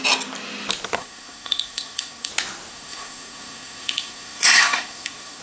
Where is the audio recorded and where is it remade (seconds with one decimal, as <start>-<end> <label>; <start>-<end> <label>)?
0.0-1.0 recorded; 1.0-2.3 remade; 2.3-2.7 recorded; 2.7-5.4 remade